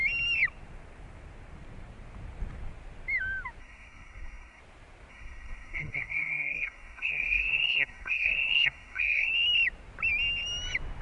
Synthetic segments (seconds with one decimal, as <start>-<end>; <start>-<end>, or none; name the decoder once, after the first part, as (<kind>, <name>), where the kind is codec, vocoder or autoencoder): 3.6-4.6 (codec, SNAC); 5.1-9.3